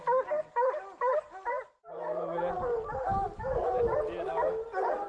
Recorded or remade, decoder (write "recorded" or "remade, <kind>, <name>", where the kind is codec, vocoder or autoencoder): recorded